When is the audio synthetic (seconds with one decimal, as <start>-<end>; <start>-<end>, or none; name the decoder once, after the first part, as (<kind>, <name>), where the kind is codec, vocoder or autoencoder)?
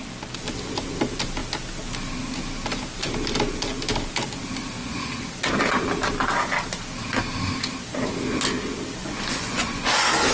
4.8-5.3 (vocoder, Vocos); 9.0-9.9